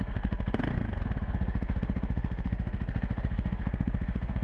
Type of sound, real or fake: fake